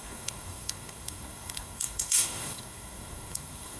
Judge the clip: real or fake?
fake